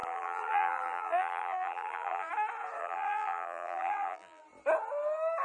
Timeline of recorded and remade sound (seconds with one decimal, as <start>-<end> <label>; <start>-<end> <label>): 0.0-2.3 remade; 2.3-2.8 recorded; 2.8-4.4 remade; 4.4-5.4 recorded